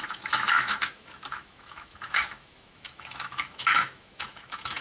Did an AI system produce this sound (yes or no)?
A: yes